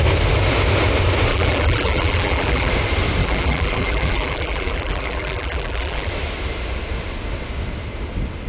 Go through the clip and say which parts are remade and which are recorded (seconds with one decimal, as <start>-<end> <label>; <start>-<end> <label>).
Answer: 0.0-1.3 recorded; 1.3-2.7 remade; 2.7-3.2 recorded; 3.2-6.1 remade; 6.1-8.5 recorded